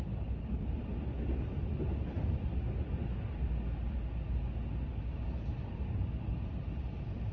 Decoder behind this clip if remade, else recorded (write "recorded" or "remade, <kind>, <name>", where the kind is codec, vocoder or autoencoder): recorded